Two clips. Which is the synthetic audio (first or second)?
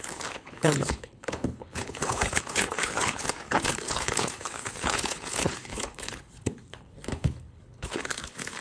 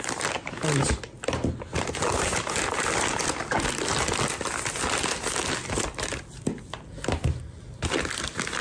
first